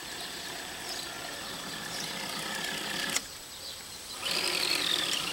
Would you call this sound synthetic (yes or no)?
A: no